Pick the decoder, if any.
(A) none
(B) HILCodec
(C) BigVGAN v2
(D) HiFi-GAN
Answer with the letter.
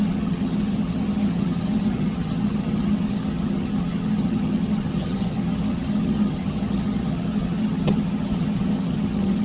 D